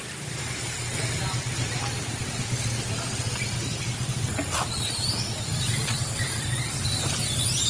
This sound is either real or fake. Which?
real